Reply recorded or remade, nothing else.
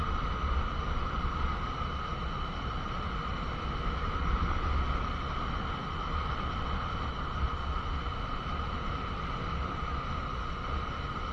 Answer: recorded